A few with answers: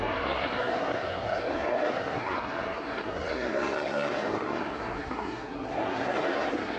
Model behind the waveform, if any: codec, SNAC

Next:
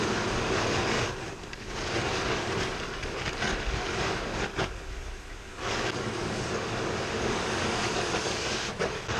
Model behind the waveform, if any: codec, DAC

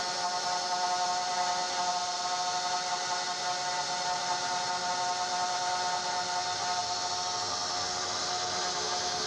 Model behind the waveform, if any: none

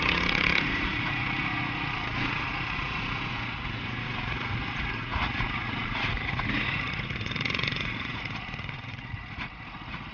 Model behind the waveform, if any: vocoder, Vocos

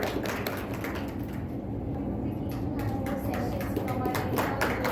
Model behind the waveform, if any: none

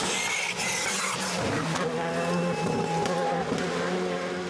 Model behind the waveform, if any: none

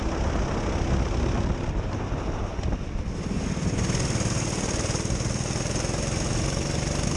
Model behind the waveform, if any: none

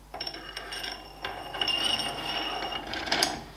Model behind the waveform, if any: vocoder, BigVGAN v2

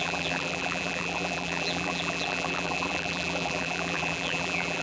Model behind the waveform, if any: vocoder, BigVGAN v2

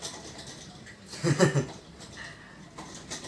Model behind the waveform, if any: none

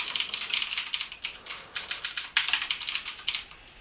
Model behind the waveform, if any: none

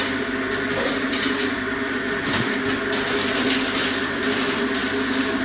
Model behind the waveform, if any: none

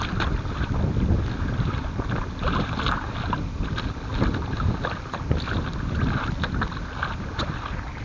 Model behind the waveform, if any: none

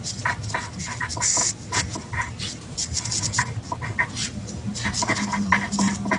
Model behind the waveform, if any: none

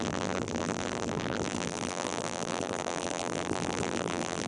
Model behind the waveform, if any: vocoder, BigVGAN v2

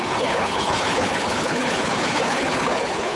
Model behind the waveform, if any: codec, HILCodec